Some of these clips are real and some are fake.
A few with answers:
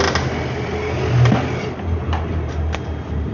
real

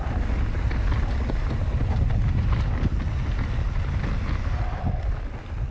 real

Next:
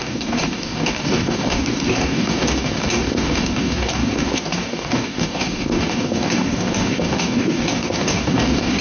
fake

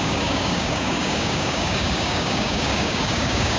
fake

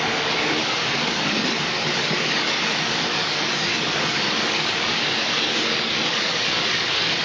fake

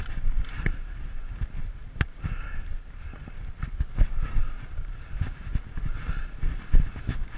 real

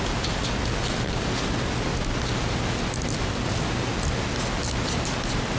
real